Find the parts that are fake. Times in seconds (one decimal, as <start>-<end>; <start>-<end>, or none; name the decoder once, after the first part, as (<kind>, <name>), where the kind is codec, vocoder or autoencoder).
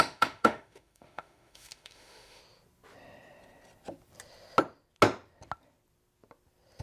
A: 0.0-2.4 (autoencoder, DAC-VAE)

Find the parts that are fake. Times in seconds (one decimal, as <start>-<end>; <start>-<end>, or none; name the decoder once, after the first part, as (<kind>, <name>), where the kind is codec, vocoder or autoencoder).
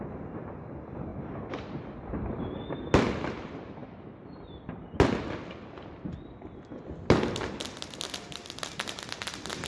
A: none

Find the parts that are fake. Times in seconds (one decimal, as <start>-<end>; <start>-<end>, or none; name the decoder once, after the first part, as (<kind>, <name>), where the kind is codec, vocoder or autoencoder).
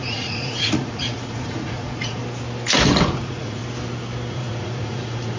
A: 0.0-2.2 (vocoder, Vocos); 3.0-3.6; 4.3-5.4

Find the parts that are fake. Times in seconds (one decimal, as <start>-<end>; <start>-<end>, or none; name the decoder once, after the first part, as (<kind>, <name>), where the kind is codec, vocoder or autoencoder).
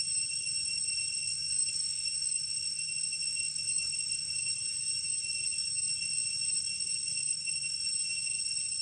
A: 1.2-4.4 (autoencoder, DAC-VAE); 7.2-7.8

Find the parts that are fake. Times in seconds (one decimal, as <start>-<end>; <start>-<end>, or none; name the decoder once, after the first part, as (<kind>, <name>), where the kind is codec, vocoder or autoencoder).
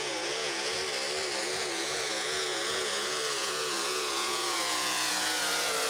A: 0.0-0.8 (vocoder, Vocos); 1.4-5.9